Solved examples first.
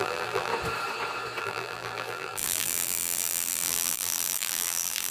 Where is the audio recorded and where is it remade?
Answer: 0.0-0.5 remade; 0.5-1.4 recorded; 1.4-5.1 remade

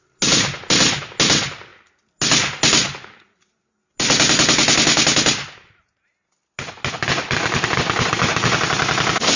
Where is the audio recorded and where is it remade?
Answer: 0.0-9.4 recorded

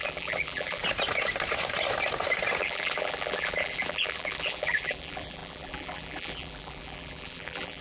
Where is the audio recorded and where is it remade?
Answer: 0.0-0.8 remade; 0.8-2.6 recorded; 2.6-7.8 remade

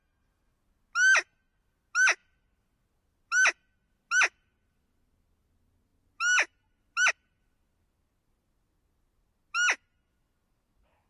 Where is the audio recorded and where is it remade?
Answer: 0.0-11.1 recorded

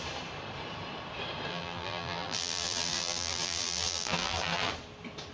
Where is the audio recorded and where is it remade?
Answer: 0.0-1.5 recorded; 1.5-4.7 remade; 4.7-5.3 recorded